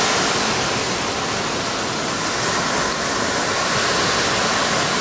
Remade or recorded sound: recorded